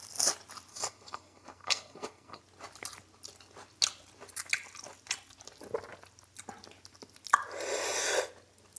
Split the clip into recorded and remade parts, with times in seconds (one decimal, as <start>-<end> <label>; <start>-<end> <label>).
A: 0.0-0.7 recorded; 0.7-2.4 remade; 2.4-8.8 recorded